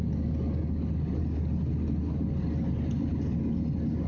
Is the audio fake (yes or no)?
no